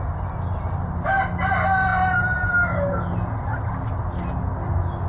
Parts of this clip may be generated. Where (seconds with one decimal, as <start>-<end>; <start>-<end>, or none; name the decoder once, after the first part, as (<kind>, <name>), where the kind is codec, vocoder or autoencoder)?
none